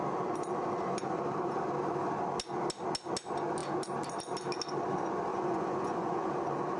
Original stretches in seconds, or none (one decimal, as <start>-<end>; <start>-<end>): 0.0-5.3; 6.3-6.8